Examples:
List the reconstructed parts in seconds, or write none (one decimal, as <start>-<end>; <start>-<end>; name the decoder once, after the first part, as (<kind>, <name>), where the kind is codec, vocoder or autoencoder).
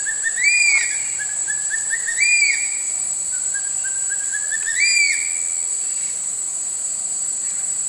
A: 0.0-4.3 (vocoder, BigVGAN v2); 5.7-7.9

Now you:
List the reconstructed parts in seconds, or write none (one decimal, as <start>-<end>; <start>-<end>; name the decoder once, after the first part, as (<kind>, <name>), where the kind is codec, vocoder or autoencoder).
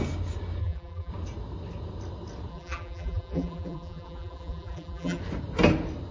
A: 0.6-1.1 (vocoder, BigVGAN v2); 2.5-5.2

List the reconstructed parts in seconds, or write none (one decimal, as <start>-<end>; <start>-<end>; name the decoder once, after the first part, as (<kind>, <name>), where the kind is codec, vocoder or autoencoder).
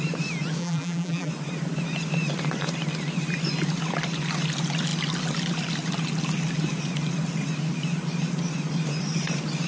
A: 0.6-1.3 (vocoder, BigVGAN v2)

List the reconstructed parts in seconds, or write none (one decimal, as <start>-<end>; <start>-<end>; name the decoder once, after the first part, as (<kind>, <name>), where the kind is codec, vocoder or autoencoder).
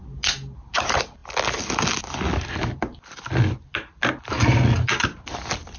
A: none